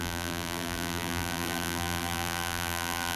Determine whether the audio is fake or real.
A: fake